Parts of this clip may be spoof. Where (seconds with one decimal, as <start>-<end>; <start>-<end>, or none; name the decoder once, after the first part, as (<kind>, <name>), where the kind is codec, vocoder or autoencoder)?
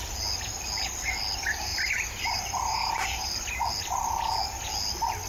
1.7-3.5 (vocoder, BigVGAN v2)